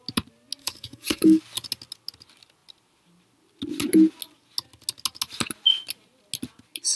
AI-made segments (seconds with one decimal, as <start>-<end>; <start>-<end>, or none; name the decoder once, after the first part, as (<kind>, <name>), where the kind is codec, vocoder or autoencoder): 0.6-1.4 (codec, DAC)